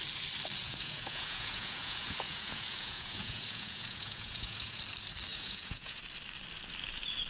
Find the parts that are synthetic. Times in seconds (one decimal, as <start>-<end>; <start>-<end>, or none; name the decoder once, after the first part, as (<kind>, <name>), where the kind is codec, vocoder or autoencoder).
0.6-4.8 (vocoder, Vocos); 5.3-6.0